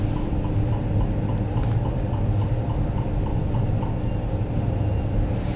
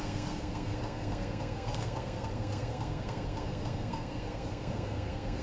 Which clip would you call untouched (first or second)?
first